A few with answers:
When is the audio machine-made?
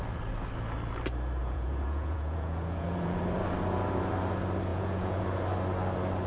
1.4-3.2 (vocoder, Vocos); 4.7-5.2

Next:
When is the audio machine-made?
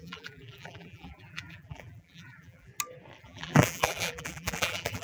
0.0-2.7 (vocoder, BigVGAN v2); 3.2-5.0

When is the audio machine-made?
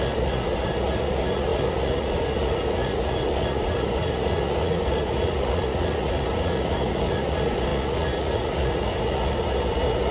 0.0-10.1 (vocoder, Vocos)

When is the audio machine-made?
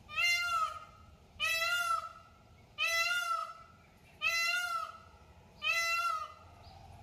none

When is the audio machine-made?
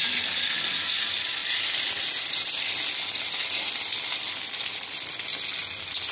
none